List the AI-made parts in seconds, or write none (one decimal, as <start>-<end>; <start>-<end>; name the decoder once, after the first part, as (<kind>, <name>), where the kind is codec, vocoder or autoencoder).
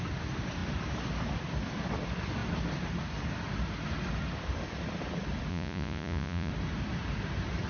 5.5-6.5 (vocoder, Vocos)